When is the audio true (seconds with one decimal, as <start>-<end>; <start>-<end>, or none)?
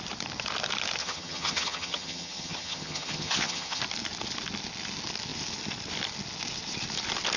0.0-1.0; 3.8-7.4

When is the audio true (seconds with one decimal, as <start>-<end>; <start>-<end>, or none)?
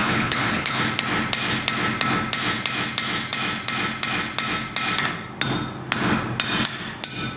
0.8-7.4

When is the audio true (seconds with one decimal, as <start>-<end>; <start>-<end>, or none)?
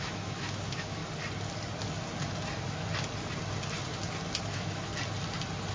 1.0-4.4; 4.9-5.7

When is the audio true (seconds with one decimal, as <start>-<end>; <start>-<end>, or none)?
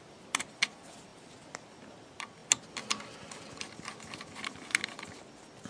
0.0-5.7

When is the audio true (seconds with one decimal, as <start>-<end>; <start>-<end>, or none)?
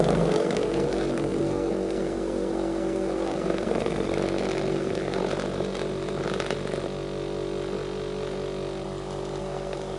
4.1-4.7; 5.2-9.4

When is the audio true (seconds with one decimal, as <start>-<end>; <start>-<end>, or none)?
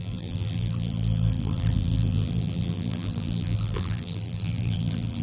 none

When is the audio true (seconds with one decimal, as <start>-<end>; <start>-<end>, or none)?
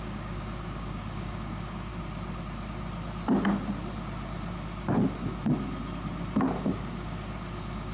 1.9-6.6